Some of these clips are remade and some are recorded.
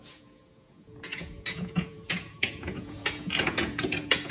remade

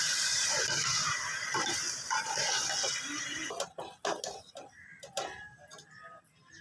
recorded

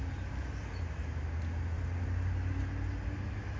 recorded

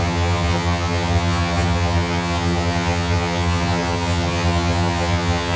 remade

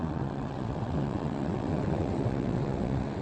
remade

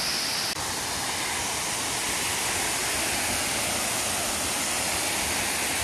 recorded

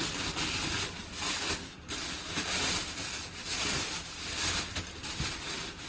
recorded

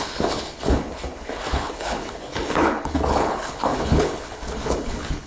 remade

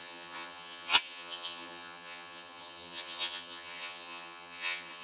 remade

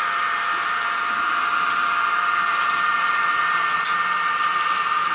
remade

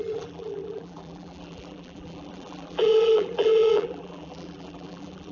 remade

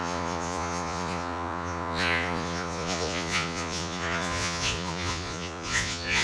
remade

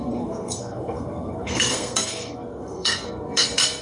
remade